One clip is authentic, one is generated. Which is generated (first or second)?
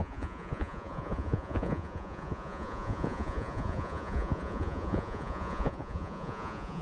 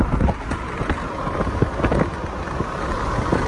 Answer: first